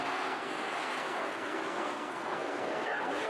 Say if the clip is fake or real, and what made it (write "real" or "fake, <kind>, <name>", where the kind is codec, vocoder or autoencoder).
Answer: fake, codec, SNAC